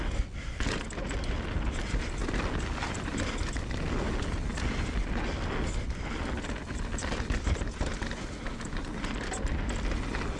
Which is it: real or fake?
real